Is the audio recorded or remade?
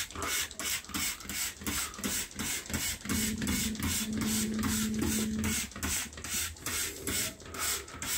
recorded